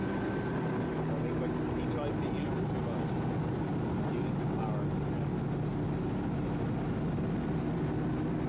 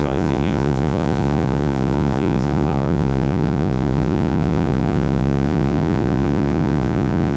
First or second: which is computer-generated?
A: second